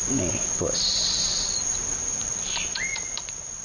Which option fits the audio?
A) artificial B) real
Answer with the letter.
A